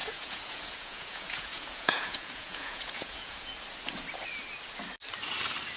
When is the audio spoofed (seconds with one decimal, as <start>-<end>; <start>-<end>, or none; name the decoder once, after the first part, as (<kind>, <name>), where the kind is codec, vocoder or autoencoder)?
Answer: 0.0-3.5 (vocoder, Vocos)